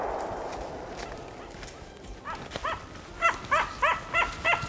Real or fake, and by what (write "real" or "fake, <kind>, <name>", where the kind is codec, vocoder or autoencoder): real